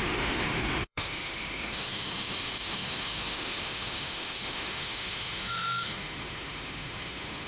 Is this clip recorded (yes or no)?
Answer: no